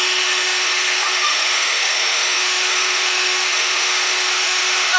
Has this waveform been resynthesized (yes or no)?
yes